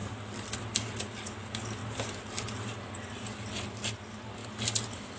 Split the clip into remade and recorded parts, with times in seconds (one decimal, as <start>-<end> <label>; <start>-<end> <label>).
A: 0.0-1.8 recorded; 1.8-2.8 remade; 2.8-5.2 recorded